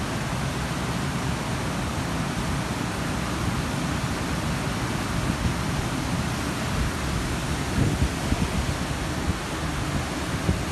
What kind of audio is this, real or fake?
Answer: real